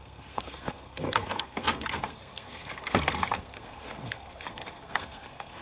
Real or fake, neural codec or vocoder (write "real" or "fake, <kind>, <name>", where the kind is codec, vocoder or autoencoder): fake, codec, SNAC